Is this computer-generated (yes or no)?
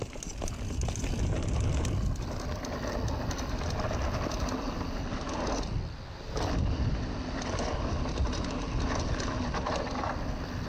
no